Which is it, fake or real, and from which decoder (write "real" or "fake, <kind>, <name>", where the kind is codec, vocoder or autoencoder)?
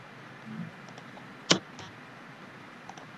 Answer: real